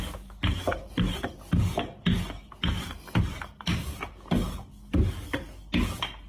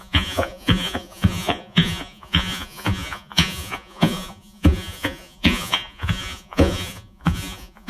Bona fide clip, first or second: first